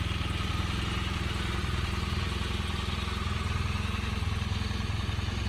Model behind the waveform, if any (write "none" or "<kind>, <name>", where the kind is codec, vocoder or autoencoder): none